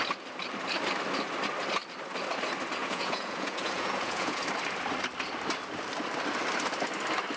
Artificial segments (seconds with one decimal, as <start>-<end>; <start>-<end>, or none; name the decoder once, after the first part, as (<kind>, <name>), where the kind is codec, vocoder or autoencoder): 2.8-4.4 (vocoder, Vocos)